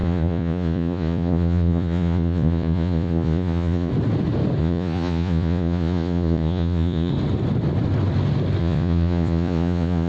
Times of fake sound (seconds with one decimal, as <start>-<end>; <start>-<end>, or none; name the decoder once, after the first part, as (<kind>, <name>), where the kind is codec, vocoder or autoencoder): 0.0-3.9 (vocoder, Vocos); 4.6-7.1; 8.6-10.1